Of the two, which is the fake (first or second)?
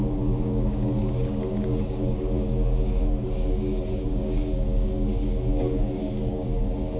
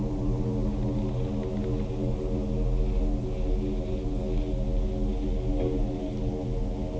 first